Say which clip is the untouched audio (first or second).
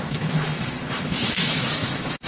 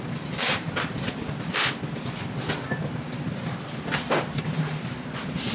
second